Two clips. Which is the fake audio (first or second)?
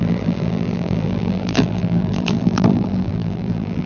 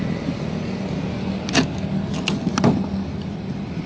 first